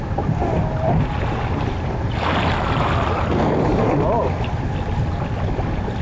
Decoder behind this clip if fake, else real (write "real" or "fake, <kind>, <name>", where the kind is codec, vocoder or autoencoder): real